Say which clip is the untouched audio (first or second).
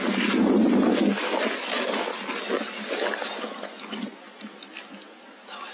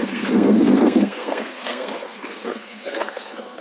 first